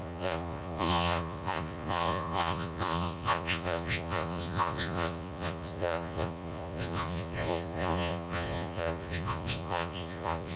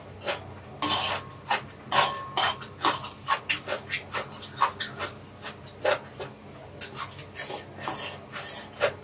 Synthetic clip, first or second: first